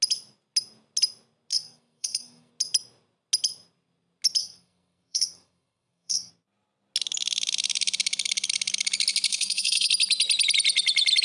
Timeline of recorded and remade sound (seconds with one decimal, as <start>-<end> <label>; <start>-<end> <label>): 0.0-1.5 recorded; 1.5-2.5 remade; 2.5-4.4 recorded; 4.4-6.3 remade; 6.3-9.3 recorded; 9.3-9.9 remade; 9.9-11.2 recorded